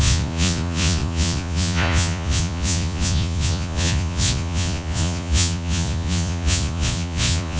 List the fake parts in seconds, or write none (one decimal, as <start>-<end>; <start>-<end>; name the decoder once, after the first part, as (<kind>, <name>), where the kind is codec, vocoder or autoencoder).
0.0-7.6 (vocoder, Vocos)